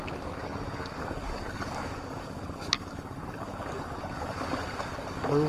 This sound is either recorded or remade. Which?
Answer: remade